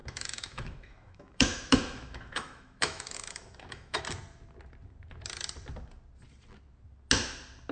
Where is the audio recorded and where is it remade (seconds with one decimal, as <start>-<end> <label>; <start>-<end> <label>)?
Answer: 0.0-4.0 remade; 4.0-7.7 recorded